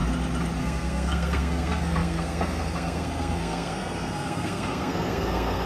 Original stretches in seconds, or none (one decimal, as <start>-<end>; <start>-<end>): 0.0-0.6